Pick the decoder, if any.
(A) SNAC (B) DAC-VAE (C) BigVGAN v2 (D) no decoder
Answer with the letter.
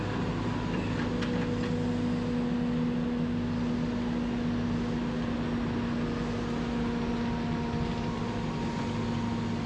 D